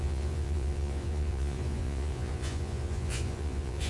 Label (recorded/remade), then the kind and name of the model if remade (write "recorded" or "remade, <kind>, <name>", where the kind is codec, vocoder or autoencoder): remade, vocoder, Vocos